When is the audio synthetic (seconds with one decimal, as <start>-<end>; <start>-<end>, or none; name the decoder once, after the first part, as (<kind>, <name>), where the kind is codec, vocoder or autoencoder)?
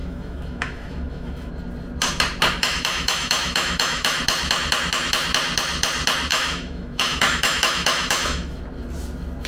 0.0-1.5 (autoencoder, DAC-VAE); 2.6-4.2; 6.3-8.6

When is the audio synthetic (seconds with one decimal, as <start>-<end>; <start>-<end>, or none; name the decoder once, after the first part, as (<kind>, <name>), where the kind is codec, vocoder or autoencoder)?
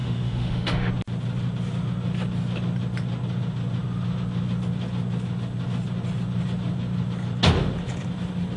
0.0-0.9 (autoencoder, DAC-VAE)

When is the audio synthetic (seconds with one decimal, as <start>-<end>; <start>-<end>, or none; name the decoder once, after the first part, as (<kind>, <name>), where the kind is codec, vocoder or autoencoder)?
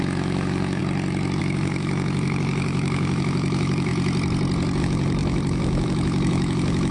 0.0-0.8 (autoencoder, DAC-VAE); 1.4-3.9; 4.8-6.9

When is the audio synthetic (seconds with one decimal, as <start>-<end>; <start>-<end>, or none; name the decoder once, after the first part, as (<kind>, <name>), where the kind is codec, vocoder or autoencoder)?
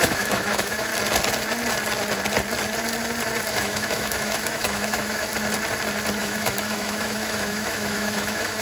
0.0-0.9 (autoencoder, DAC-VAE); 3.5-5.3; 6.2-8.6